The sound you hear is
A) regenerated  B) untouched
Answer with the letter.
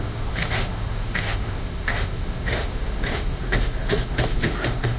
A